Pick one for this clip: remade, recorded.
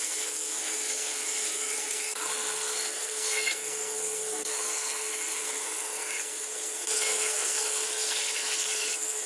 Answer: remade